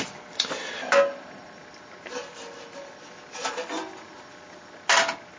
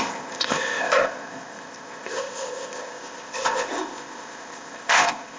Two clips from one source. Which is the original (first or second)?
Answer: first